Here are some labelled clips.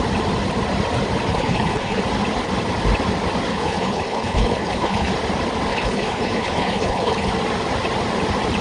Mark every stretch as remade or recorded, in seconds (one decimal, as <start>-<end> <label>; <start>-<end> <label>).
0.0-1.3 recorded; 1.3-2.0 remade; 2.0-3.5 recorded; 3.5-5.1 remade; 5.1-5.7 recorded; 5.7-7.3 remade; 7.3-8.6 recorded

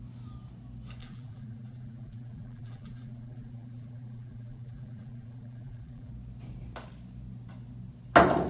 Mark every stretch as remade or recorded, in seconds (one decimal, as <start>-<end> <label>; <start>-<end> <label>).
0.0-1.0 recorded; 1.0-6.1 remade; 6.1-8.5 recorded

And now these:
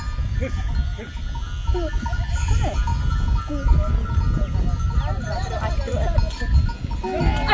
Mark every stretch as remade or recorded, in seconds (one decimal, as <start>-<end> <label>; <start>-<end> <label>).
0.0-7.5 recorded